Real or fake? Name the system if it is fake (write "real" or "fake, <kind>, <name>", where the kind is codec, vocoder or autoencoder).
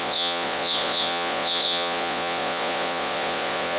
fake, vocoder, Vocos